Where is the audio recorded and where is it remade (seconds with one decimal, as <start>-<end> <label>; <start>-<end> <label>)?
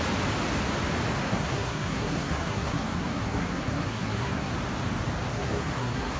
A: 0.0-1.2 recorded; 1.2-4.5 remade; 4.5-5.3 recorded; 5.3-6.2 remade